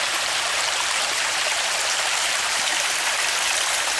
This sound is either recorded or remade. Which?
remade